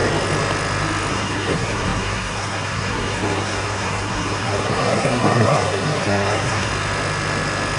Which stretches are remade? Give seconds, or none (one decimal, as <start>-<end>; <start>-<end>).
1.1-6.7